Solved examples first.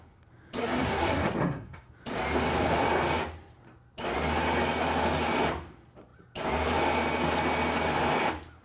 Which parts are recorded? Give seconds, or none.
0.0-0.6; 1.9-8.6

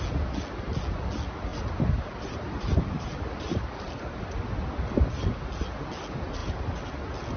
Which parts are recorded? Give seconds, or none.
0.0-1.5; 4.2-6.4; 7.0-7.4

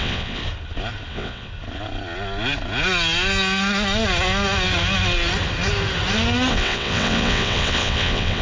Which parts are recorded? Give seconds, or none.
0.4-1.1; 1.5-6.5